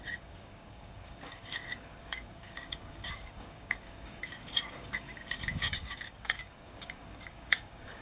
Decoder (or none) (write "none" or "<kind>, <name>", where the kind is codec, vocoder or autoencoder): codec, DAC